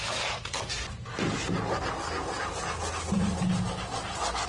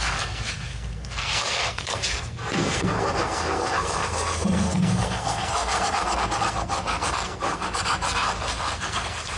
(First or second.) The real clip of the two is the first